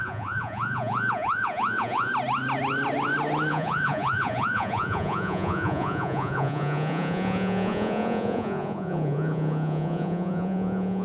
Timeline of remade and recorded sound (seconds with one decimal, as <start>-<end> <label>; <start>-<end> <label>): 0.0-2.1 remade; 2.1-3.5 recorded; 3.5-11.0 remade